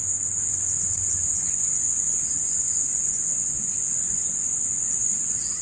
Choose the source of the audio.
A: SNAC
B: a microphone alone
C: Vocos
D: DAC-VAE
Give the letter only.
C